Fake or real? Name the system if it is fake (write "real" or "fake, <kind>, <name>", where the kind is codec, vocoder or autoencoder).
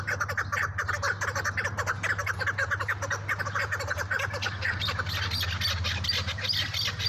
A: real